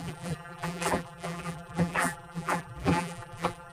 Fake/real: fake